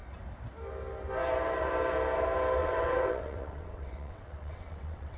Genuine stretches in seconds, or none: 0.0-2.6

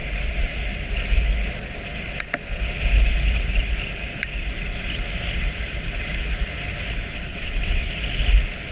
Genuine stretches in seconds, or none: 0.0-7.3; 7.9-8.7